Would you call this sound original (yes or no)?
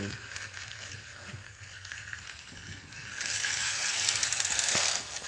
no